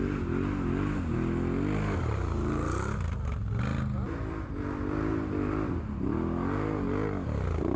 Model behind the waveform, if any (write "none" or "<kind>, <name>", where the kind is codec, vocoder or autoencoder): none